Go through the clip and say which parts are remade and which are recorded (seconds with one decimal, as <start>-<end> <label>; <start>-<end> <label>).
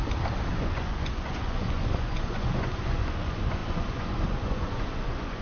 0.0-0.5 recorded; 0.5-5.4 remade